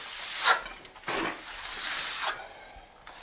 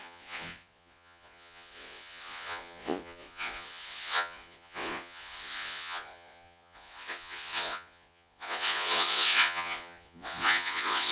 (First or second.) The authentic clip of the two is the first